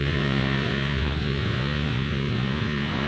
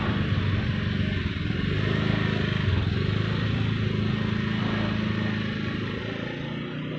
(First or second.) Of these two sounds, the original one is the second